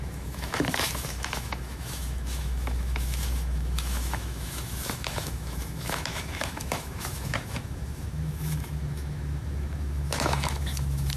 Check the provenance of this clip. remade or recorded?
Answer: remade